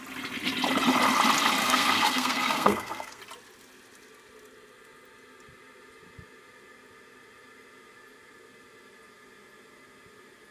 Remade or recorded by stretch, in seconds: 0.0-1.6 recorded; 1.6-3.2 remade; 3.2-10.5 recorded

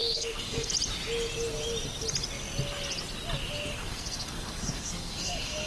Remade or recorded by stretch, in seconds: 0.0-0.7 remade; 0.7-3.7 recorded; 3.7-5.7 remade

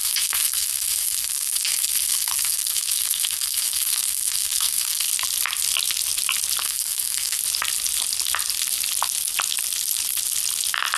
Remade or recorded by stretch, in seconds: 0.0-5.1 remade; 5.1-6.6 recorded; 6.6-7.4 remade; 7.4-11.0 recorded

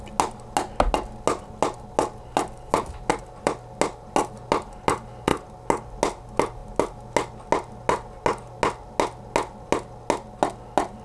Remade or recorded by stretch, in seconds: 0.0-11.0 recorded

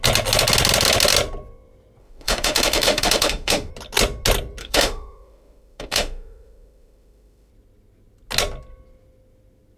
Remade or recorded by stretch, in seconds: 0.0-2.0 recorded; 2.0-3.7 remade; 3.7-4.6 recorded; 4.6-7.5 remade; 7.5-9.8 recorded

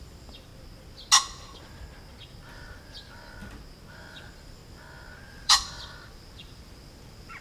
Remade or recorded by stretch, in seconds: 0.0-0.5 remade; 0.5-2.5 recorded; 2.5-3.4 remade; 3.4-3.9 recorded; 3.9-4.6 remade; 4.6-5.3 recorded; 5.3-7.4 remade

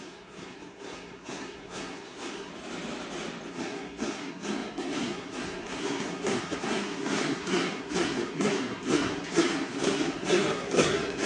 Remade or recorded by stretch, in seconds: 0.0-2.5 remade; 2.5-3.5 recorded; 3.5-11.3 remade

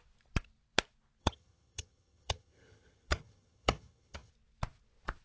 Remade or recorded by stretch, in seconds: 0.0-1.2 recorded; 1.2-4.3 remade; 4.3-5.2 recorded